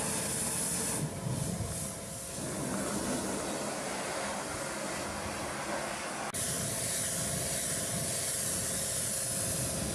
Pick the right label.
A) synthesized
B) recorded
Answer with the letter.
B